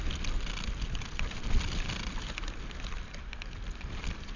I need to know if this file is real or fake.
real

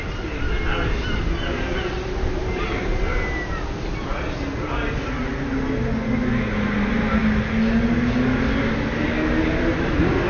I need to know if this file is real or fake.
real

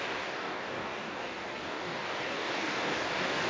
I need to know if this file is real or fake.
fake